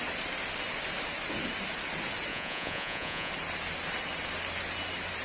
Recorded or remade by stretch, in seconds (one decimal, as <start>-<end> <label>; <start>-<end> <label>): 0.0-2.3 recorded; 2.3-3.3 remade; 3.3-5.2 recorded

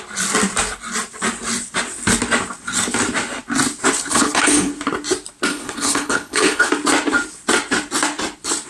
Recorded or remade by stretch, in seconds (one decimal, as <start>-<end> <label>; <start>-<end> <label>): 0.0-4.1 recorded; 4.1-4.7 remade; 4.7-5.5 recorded; 5.5-6.7 remade; 6.7-8.7 recorded

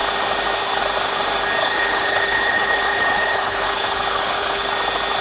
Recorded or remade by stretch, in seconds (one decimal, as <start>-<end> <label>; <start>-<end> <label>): 0.0-1.6 recorded; 1.6-4.7 remade; 4.7-5.2 recorded

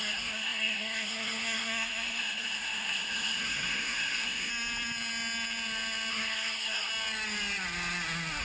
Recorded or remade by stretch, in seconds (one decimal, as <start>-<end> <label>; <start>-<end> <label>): 0.0-4.5 remade; 4.5-6.1 recorded; 6.1-6.9 remade; 6.9-8.4 recorded

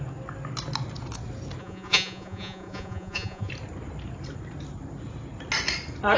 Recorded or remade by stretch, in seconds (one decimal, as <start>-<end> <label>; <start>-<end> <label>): 0.0-1.6 recorded; 1.6-3.5 remade; 3.5-6.2 recorded